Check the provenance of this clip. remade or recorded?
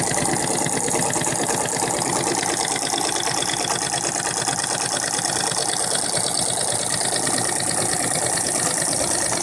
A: recorded